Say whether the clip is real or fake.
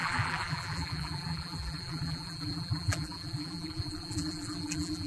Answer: fake